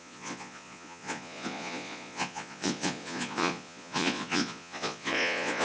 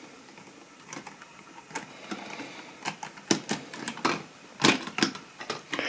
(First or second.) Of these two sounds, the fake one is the first